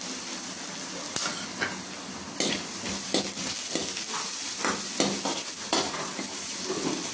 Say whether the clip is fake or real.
real